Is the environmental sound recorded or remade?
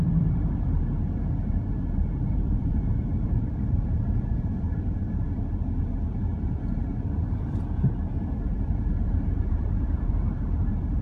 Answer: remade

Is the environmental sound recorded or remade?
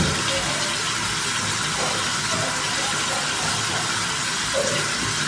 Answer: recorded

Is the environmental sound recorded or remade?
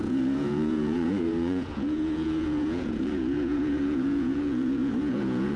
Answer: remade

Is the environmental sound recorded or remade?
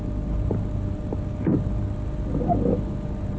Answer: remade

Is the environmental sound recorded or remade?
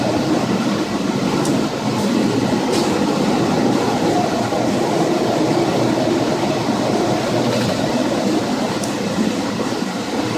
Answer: remade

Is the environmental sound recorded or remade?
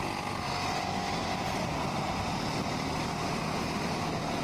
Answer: recorded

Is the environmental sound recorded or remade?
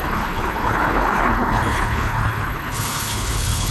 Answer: remade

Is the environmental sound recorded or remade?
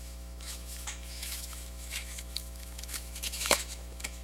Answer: remade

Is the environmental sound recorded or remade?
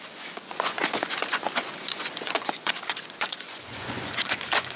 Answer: remade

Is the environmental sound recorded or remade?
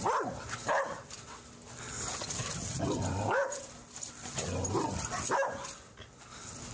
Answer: recorded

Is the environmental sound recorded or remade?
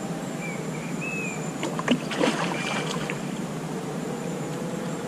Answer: remade